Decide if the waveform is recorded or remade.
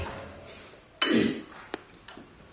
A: recorded